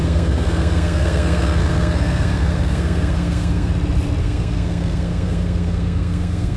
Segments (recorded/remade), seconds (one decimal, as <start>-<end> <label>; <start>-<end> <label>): 0.0-3.7 remade; 3.7-4.2 recorded; 4.2-6.6 remade